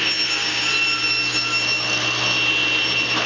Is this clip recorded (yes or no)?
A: yes